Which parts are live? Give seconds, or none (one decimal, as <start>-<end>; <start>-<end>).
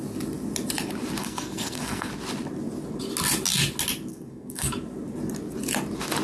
0.0-1.2; 2.1-4.1; 4.7-6.2